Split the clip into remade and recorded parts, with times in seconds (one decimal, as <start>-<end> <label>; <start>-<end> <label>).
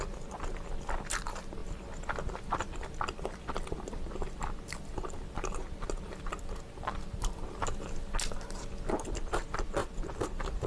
0.0-10.7 recorded